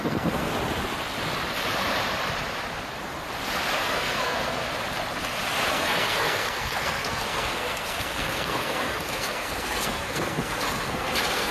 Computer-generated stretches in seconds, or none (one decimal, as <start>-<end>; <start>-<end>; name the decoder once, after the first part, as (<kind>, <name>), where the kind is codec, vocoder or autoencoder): 0.0-0.5 (codec, SNAC); 3.8-4.6; 5.7-11.5